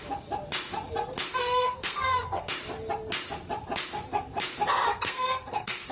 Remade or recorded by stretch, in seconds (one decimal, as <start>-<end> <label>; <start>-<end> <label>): 0.0-1.3 recorded; 1.3-2.5 remade; 2.5-4.9 recorded; 4.9-5.9 remade